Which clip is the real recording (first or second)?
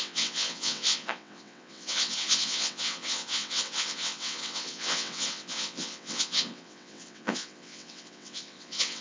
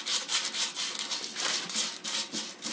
second